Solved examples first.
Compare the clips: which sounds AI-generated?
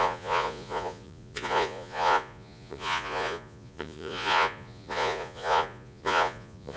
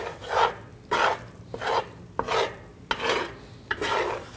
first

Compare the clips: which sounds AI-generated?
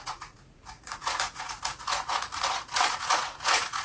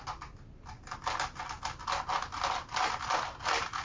first